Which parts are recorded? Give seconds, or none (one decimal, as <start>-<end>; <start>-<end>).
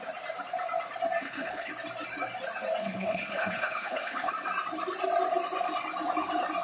0.0-1.2; 1.7-2.8; 4.3-6.6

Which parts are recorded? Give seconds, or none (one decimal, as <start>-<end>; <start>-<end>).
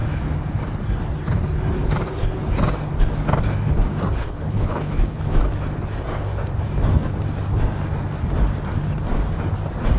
0.0-4.2; 5.2-10.0